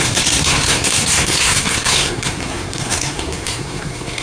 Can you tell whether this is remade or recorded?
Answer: remade